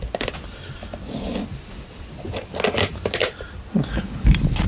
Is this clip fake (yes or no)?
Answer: no